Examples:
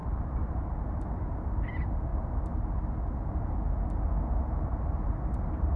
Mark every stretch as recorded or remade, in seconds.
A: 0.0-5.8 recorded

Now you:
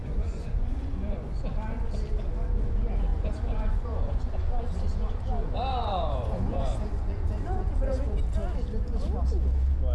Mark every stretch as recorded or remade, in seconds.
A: 0.0-1.3 remade; 1.3-3.1 recorded; 3.1-4.6 remade; 4.6-5.7 recorded; 5.7-8.2 remade; 8.2-9.9 recorded

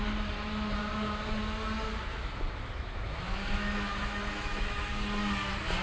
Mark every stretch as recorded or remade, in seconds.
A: 0.0-0.8 recorded; 0.8-1.4 remade; 1.4-2.1 recorded; 2.1-4.9 remade; 4.9-5.8 recorded